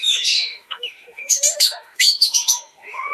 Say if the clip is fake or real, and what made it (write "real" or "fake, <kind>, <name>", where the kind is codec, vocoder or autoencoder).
fake, autoencoder, DAC-VAE